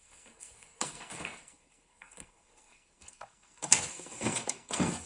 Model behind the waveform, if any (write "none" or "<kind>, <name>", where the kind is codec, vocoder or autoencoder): codec, SNAC